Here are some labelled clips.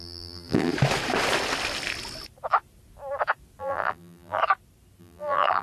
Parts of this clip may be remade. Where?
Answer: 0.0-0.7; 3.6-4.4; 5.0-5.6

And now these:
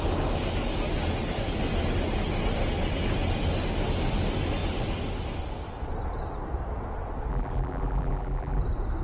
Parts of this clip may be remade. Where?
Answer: 7.3-8.6

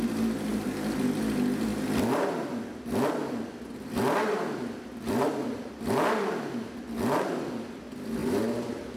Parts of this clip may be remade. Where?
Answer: 0.5-1.0; 8.2-9.0

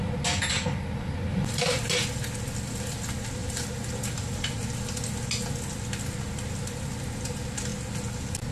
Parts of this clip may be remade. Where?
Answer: 1.3-1.9; 3.4-4.6

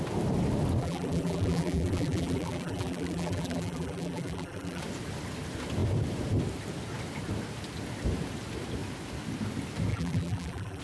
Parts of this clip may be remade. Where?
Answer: 0.8-4.8; 9.9-10.8

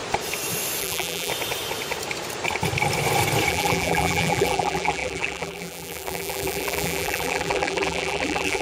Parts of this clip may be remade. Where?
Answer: 0.8-1.3; 3.5-8.6